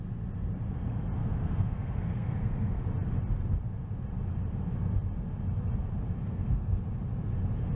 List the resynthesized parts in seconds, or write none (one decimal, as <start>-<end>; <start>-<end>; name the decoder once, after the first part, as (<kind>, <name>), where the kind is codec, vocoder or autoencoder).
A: 1.2-2.8 (codec, SNAC); 6.2-6.8